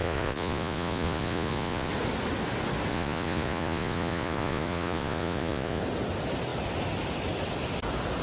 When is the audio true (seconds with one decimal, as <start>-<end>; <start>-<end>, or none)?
1.9-2.9; 5.8-8.2